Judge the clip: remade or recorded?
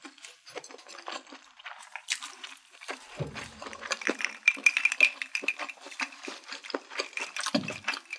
remade